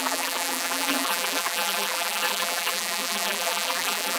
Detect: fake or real fake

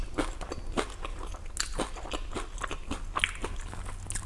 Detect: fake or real real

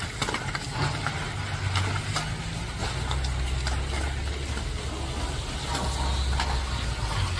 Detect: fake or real real